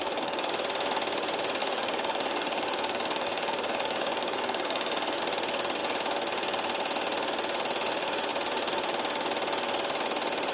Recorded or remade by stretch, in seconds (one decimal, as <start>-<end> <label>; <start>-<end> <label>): 0.0-0.5 remade; 0.5-1.6 recorded; 1.6-5.2 remade; 5.2-10.5 recorded